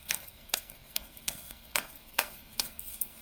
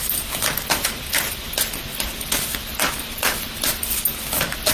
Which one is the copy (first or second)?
first